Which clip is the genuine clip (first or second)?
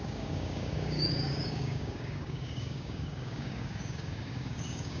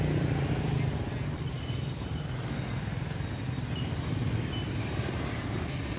second